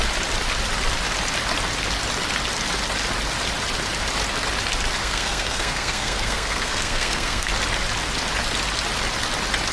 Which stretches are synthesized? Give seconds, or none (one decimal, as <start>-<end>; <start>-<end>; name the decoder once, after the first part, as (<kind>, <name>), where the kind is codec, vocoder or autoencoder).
5.0-7.5 (codec, SNAC)